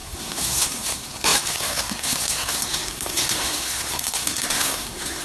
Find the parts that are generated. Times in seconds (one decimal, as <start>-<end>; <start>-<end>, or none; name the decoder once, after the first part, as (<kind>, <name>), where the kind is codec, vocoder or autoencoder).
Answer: 0.0-5.2 (codec, SNAC)